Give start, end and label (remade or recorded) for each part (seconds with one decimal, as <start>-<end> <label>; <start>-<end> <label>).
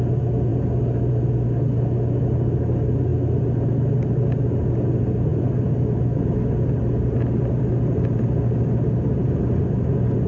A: 0.0-10.3 recorded